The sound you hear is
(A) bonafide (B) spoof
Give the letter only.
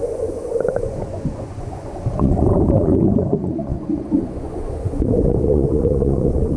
B